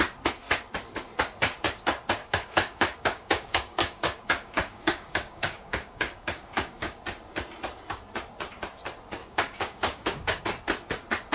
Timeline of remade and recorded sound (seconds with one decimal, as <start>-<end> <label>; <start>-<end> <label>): 0.0-2.2 recorded; 2.2-7.0 remade; 7.0-9.2 recorded; 9.2-10.4 remade; 10.4-11.3 recorded